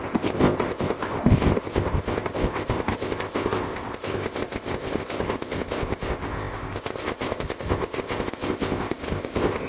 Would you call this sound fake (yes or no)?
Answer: yes